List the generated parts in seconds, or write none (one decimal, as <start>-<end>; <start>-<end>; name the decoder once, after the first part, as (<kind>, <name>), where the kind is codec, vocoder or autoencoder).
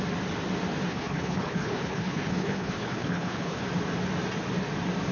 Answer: 0.9-3.6 (codec, HILCodec)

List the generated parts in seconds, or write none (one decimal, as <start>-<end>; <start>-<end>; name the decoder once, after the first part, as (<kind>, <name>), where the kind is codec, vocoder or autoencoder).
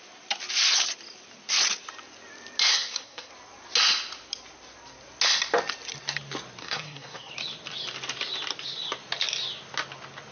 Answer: 2.7-3.3 (codec, SNAC); 6.6-7.3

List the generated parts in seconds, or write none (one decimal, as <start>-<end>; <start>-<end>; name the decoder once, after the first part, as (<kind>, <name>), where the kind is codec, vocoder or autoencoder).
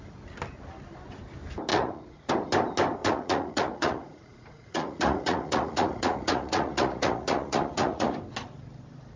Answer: 1.7-2.3 (vocoder, Vocos); 3.0-8.1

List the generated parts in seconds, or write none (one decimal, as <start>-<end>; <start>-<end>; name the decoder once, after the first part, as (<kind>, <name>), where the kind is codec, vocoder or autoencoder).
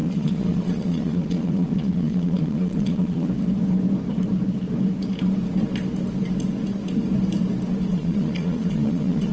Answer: 0.0-3.3 (vocoder, Vocos); 7.9-9.3